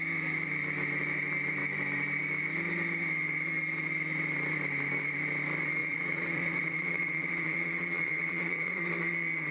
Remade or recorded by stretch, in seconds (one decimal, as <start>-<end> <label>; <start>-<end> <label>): 0.0-5.8 recorded; 5.8-8.8 remade; 8.8-9.5 recorded